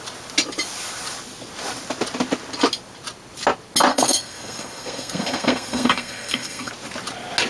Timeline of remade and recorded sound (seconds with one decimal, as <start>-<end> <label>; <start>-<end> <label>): 0.0-3.9 recorded; 3.9-6.7 remade; 6.7-7.5 recorded